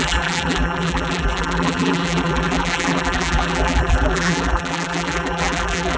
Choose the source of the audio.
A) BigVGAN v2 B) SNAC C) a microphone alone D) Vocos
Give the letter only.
A